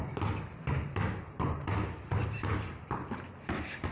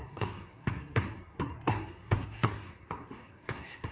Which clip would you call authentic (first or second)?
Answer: first